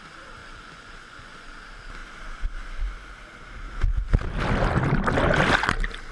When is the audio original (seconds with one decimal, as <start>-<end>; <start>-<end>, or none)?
0.0-0.4; 1.5-6.1